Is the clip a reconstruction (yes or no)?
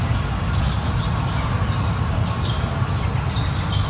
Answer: no